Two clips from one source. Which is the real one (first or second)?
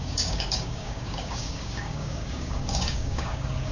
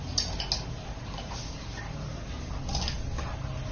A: second